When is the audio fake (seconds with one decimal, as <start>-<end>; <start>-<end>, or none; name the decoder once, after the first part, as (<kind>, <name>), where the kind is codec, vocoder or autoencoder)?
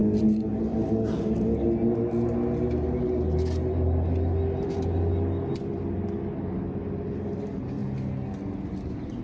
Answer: none